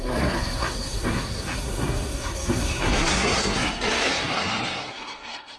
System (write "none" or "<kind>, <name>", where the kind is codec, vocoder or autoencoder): codec, SNAC